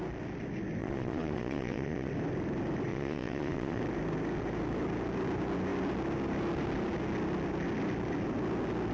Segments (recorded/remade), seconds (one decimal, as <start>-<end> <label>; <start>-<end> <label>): 0.0-0.8 recorded; 0.8-2.1 remade; 2.1-2.9 recorded; 2.9-3.8 remade; 3.8-8.9 recorded